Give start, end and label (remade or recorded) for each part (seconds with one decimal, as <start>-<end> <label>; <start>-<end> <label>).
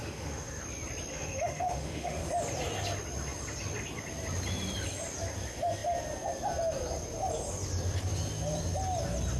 0.0-0.6 remade; 0.6-1.1 recorded; 1.1-2.3 remade; 2.3-9.4 recorded